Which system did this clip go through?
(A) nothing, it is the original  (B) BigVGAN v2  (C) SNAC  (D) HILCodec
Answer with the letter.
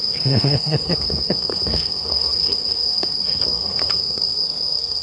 C